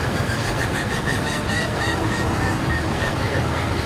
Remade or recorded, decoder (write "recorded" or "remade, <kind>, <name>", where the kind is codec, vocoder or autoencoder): remade, codec, SNAC